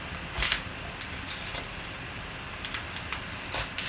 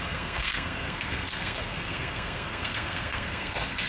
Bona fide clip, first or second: first